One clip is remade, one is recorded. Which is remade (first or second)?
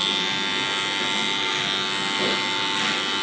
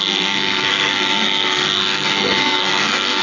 second